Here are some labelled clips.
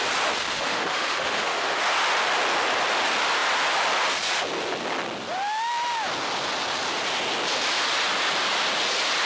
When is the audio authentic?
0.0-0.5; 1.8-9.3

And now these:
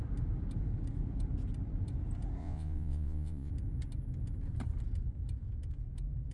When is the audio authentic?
0.0-2.4; 3.5-6.3

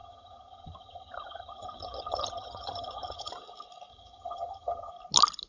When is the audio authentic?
3.3-3.9; 4.9-5.5